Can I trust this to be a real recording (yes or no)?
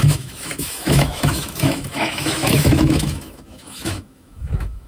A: no